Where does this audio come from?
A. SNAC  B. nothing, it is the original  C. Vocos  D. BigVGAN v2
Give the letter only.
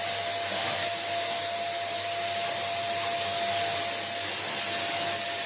B